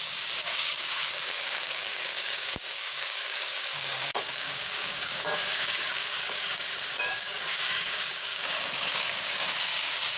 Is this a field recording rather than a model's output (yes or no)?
no